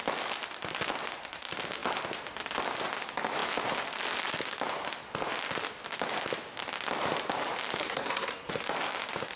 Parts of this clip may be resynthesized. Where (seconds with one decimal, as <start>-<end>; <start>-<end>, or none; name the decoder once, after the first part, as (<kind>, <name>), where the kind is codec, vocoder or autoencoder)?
7.8-8.5 (codec, SNAC)